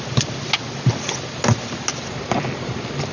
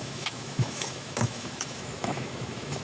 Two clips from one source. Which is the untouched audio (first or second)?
first